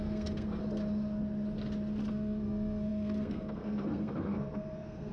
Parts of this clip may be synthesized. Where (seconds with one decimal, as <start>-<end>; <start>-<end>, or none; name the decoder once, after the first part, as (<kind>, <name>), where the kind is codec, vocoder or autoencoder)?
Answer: 0.0-0.6 (codec, SNAC); 2.1-5.1